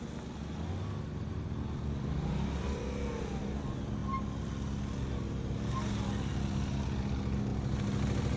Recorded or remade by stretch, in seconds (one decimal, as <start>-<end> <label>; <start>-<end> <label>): 0.0-8.4 recorded